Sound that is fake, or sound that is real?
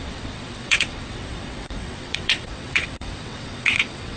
fake